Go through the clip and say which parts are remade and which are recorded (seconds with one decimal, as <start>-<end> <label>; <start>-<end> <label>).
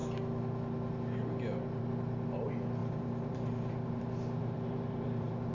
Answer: 0.0-2.8 recorded; 2.8-4.0 remade; 4.0-4.4 recorded; 4.4-5.5 remade